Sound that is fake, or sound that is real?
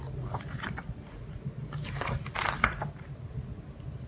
real